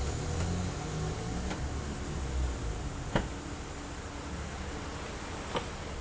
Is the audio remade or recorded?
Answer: recorded